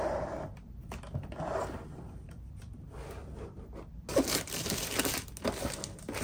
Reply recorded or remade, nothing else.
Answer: recorded